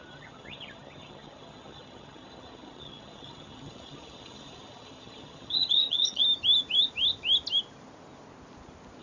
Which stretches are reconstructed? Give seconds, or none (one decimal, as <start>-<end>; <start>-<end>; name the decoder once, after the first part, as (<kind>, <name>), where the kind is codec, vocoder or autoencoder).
0.0-6.2 (vocoder, HiFi-GAN)